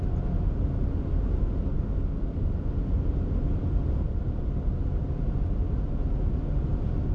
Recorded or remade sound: recorded